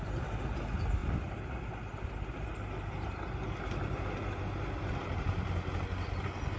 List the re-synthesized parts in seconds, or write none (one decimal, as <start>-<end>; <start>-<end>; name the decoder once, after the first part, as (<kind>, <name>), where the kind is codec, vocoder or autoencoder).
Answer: none